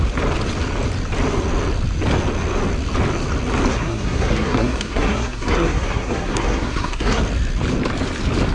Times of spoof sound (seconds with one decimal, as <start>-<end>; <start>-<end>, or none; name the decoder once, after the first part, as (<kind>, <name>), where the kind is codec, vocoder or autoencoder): 3.7-7.2 (codec, SNAC)